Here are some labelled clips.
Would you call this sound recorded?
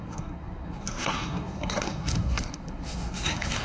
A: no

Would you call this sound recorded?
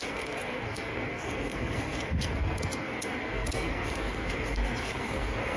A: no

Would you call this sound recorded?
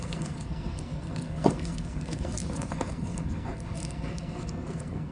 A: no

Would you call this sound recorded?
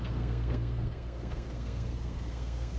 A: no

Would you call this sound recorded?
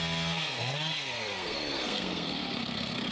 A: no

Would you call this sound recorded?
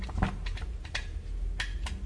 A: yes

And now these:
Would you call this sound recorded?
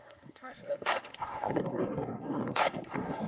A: no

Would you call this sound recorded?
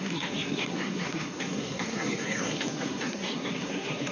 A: no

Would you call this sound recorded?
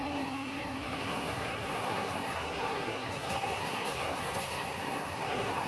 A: no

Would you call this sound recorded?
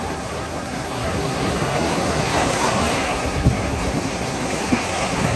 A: no